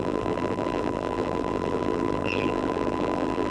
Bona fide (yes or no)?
no